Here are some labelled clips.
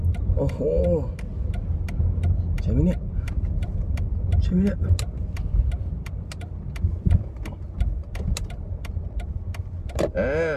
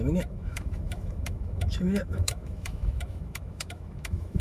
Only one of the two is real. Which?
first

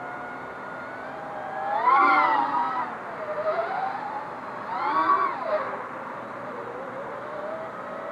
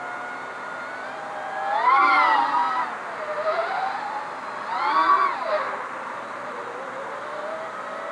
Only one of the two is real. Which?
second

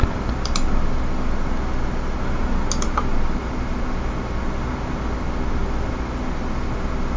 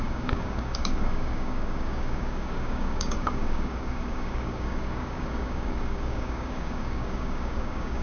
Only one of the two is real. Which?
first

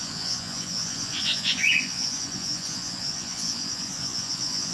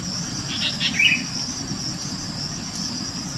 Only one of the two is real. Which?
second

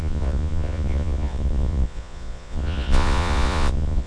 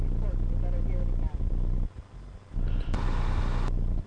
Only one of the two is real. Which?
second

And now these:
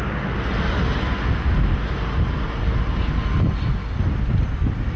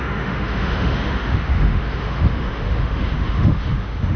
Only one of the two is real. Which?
first